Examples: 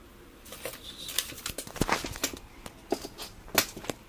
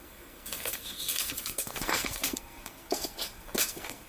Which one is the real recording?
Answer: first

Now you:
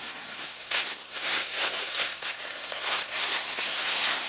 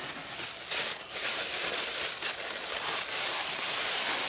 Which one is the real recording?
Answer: second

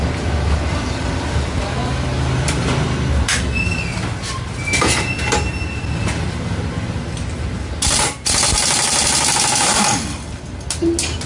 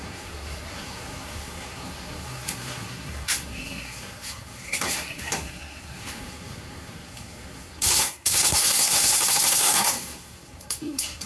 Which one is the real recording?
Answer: first